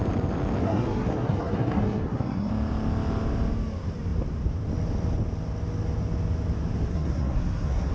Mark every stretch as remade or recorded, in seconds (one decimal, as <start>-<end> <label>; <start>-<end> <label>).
0.0-0.6 recorded; 0.6-2.5 remade; 2.5-6.9 recorded; 6.9-7.9 remade